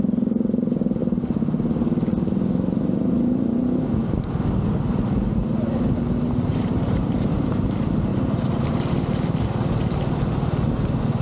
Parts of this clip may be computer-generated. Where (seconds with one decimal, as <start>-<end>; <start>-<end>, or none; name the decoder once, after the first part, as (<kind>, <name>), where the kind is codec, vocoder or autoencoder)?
6.5-7.7 (vocoder, BigVGAN v2); 8.1-8.9